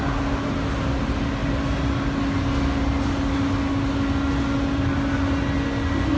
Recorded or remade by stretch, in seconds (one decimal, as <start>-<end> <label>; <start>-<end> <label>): 0.0-6.2 recorded